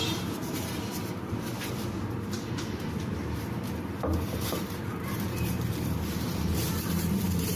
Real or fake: fake